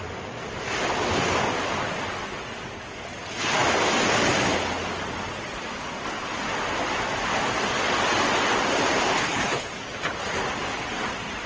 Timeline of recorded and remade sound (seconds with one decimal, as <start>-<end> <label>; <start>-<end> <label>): 0.0-9.1 recorded; 9.1-9.7 remade; 9.7-11.5 recorded